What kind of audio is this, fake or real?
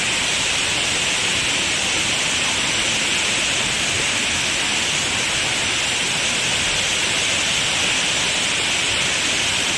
real